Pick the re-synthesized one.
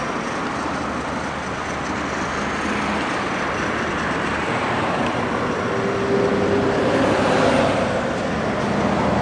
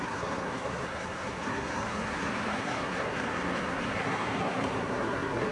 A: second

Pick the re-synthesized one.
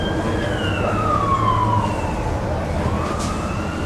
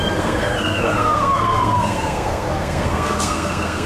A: second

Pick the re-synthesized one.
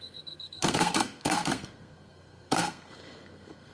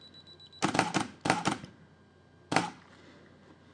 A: first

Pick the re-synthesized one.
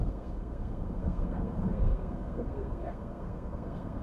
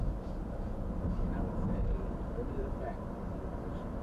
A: first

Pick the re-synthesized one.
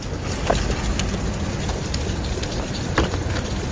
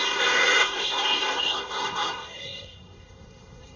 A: second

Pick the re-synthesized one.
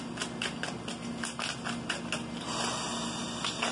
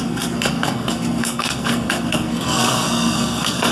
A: second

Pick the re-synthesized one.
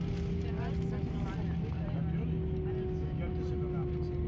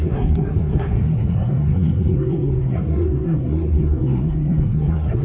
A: second